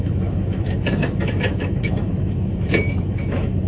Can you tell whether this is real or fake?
fake